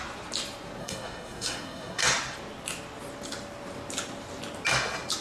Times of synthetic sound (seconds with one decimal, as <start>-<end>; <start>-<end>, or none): 0.8-2.0